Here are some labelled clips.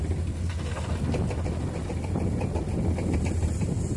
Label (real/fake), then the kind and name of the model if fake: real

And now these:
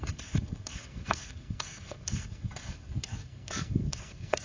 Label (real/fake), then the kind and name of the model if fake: fake, codec, SNAC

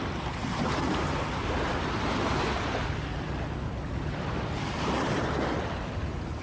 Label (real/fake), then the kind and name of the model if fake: real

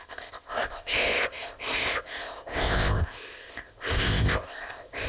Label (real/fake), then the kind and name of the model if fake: fake, codec, ZipCodec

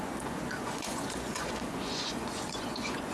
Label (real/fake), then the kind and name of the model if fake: fake, vocoder, Vocos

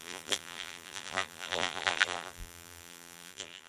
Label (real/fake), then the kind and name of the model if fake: fake, vocoder, BigVGAN v2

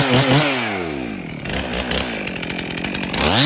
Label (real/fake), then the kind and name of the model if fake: real